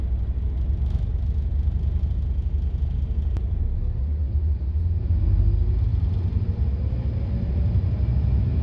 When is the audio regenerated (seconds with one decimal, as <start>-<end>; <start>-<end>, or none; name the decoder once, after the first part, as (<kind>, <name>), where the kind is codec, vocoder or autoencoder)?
none